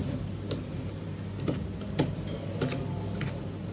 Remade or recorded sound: recorded